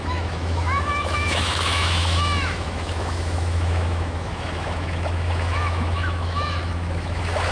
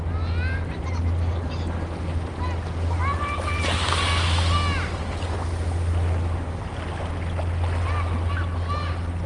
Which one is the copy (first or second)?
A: first